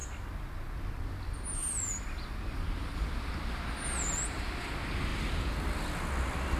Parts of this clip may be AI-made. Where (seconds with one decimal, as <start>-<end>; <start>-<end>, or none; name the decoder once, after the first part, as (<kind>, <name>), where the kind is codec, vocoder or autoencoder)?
1.6-3.4 (vocoder, BigVGAN v2)